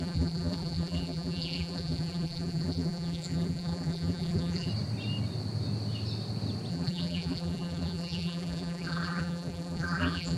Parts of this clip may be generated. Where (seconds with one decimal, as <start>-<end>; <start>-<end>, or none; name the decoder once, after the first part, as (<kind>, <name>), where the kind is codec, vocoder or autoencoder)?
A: 0.0-4.7 (vocoder, BigVGAN v2); 6.7-10.4